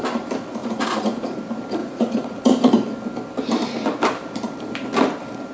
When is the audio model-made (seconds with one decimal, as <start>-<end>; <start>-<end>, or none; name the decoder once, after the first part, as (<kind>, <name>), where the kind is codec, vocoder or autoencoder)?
0.6-1.4 (vocoder, Vocos); 1.8-2.7